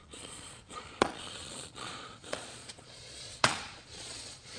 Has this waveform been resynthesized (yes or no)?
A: yes